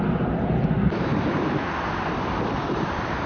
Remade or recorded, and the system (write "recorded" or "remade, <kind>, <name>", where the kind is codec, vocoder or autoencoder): recorded